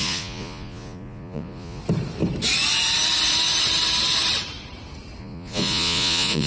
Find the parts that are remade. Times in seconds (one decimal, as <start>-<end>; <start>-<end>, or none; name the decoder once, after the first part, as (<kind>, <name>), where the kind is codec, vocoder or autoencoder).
0.0-1.8 (vocoder, Vocos); 5.2-6.5